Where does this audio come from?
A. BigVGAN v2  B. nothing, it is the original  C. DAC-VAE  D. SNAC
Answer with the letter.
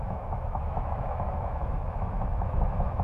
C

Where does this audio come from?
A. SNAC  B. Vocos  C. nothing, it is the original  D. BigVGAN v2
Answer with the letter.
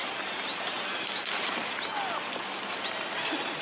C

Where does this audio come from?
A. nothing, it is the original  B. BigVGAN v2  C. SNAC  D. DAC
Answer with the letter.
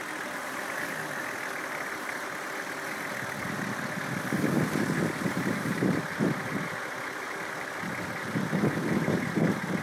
A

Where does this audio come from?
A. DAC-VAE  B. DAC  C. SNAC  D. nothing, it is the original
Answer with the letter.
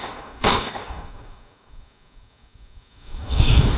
B